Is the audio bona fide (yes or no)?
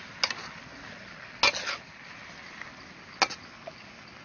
yes